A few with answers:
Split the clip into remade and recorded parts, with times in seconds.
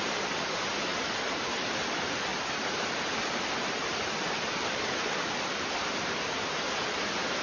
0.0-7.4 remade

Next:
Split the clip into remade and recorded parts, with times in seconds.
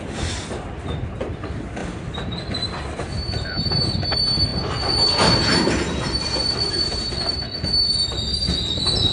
0.0-9.1 recorded